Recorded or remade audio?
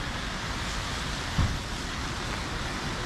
recorded